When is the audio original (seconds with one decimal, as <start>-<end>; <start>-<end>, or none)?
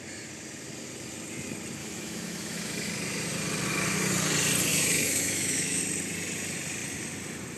0.0-1.8; 2.9-4.7; 5.8-7.6